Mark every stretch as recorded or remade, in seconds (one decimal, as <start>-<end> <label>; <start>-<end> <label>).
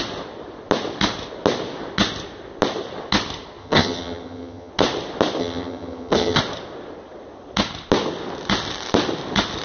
0.0-3.6 recorded; 3.6-4.7 remade; 4.7-5.4 recorded; 5.4-6.4 remade; 6.4-9.6 recorded